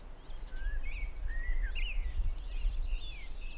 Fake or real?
real